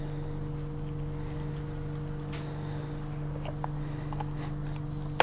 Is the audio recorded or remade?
recorded